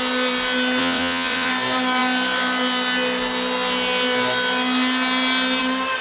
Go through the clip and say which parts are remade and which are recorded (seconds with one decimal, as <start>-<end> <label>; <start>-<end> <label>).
0.0-0.8 recorded; 0.8-1.5 remade; 1.5-6.0 recorded